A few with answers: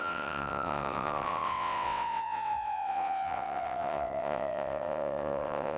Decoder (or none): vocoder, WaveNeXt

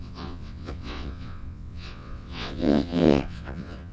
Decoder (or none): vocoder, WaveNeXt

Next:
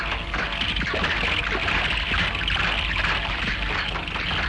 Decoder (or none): none